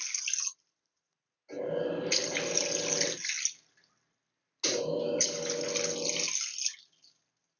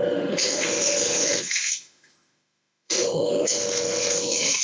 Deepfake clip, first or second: second